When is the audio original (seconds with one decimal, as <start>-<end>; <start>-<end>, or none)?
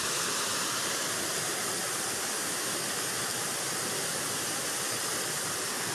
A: 0.0-5.9